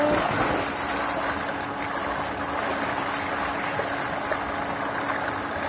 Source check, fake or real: real